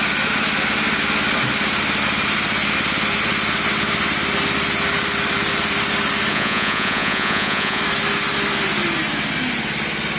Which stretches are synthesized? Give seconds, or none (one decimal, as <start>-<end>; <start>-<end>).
6.3-7.8